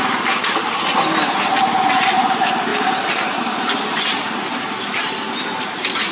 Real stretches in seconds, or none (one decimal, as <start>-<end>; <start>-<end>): 0.0-6.1